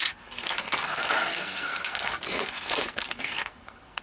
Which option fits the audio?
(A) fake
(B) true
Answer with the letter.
A